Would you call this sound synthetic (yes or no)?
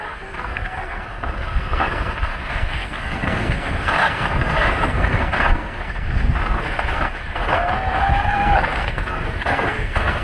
yes